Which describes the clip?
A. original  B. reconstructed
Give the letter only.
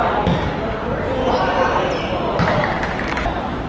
A